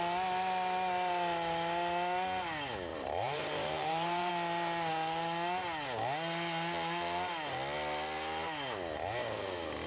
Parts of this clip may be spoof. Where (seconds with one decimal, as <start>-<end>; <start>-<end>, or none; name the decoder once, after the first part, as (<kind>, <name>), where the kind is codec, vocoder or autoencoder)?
2.9-4.3 (vocoder, BigVGAN v2)